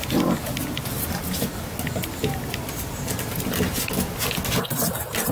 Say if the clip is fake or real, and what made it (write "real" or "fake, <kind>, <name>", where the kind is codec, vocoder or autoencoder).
real